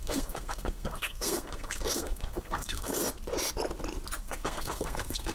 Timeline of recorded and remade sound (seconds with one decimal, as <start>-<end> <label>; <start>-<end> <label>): 0.0-3.0 remade; 3.0-4.2 recorded; 4.2-5.3 remade